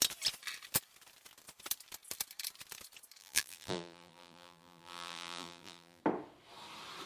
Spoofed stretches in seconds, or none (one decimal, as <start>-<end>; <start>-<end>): 3.2-6.0